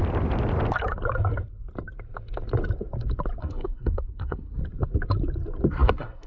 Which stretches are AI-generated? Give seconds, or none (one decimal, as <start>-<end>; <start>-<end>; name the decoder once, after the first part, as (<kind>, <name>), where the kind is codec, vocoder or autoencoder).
3.4-4.6 (codec, SNAC); 5.7-6.3